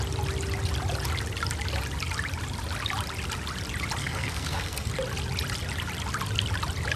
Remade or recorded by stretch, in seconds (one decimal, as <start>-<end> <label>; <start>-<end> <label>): 0.0-4.0 recorded; 4.0-4.9 remade; 4.9-7.0 recorded